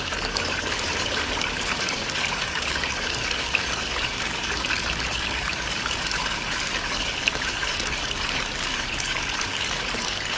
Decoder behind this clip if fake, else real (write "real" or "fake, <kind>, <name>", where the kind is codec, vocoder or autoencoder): fake, codec, DAC